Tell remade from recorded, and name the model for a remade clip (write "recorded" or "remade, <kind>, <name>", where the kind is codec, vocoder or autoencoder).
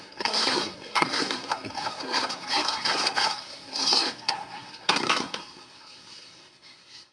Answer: remade, codec, SNAC